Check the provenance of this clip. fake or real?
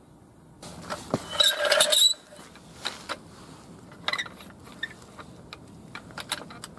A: real